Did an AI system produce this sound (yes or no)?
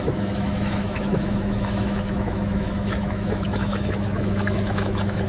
yes